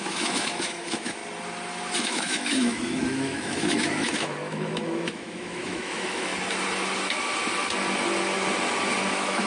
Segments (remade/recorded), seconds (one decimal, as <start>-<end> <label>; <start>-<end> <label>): 0.0-1.2 remade; 1.2-2.0 recorded; 2.0-6.3 remade; 6.3-9.1 recorded; 9.1-9.5 remade